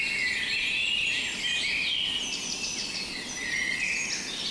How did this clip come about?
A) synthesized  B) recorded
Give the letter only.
B